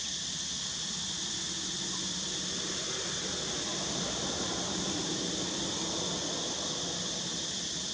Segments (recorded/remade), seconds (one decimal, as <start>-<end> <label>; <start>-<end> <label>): 0.0-7.9 recorded